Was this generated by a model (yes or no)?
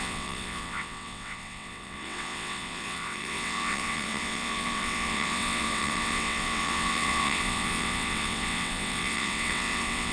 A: yes